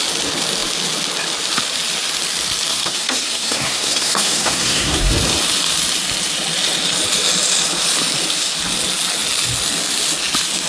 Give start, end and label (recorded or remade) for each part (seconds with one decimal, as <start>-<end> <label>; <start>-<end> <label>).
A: 0.0-2.7 recorded; 2.7-5.1 remade; 5.1-10.7 recorded